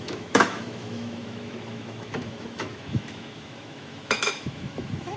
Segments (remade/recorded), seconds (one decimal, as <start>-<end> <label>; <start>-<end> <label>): 0.0-5.2 remade